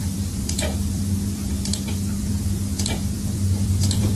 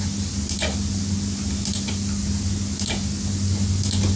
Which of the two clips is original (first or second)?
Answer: second